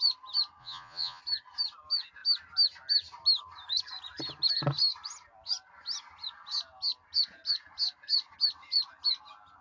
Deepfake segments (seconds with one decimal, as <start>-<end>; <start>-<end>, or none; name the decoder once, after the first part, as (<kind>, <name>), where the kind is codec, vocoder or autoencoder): 0.6-1.2 (vocoder, Vocos)